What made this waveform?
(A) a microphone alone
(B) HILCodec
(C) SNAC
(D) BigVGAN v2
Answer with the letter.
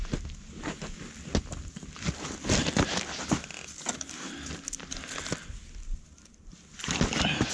A